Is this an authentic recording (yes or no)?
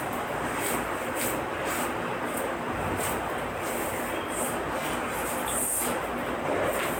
yes